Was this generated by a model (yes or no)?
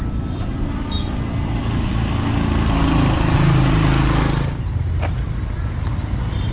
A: no